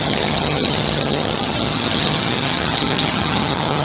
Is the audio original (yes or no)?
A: no